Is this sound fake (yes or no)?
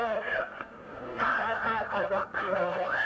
yes